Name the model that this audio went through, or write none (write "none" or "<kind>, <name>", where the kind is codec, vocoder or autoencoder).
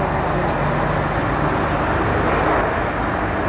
none